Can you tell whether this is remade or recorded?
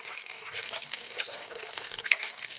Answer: remade